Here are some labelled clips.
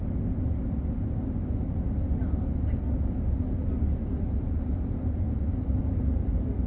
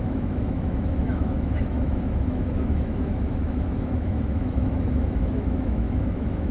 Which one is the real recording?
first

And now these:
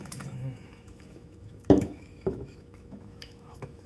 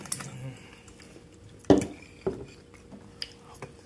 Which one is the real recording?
second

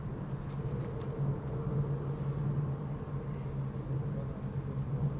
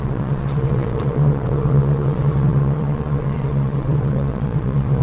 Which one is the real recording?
first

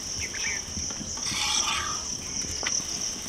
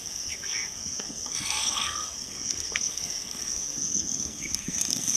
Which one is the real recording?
first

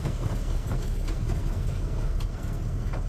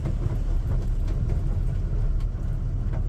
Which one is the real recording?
second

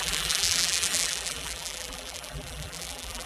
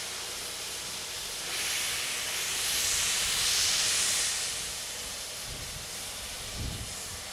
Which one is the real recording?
second